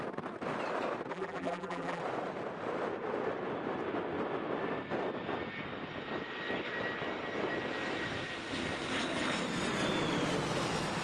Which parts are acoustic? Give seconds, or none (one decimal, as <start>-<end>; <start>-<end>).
0.0-1.1; 2.0-11.0